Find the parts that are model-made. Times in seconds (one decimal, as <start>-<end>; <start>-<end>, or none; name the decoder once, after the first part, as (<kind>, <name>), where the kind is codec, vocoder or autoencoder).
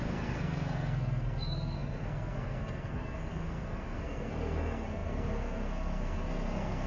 0.0-6.9 (codec, SNAC)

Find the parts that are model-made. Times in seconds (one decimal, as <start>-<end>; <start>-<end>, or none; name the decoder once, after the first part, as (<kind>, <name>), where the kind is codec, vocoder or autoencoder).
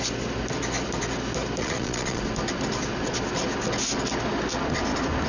1.6-2.2 (vocoder, Vocos)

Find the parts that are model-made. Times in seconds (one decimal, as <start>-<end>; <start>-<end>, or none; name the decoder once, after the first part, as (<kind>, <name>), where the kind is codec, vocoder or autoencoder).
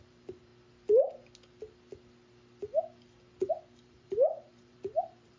0.0-0.5 (vocoder, BigVGAN v2); 3.5-5.4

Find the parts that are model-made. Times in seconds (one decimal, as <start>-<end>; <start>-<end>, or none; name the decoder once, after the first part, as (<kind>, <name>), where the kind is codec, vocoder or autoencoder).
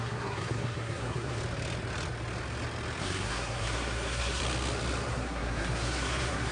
0.0-1.4 (codec, SNAC); 3.0-4.4; 5.1-6.5